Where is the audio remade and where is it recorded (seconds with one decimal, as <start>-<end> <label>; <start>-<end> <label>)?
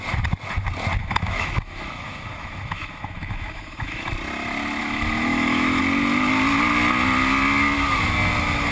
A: 0.0-1.0 recorded; 1.0-4.1 remade; 4.1-4.8 recorded; 4.8-5.8 remade; 5.8-8.7 recorded